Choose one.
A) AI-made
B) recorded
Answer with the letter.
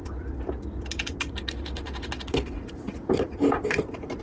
B